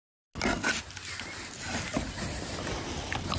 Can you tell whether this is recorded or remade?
recorded